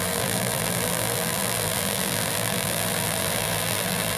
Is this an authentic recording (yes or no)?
no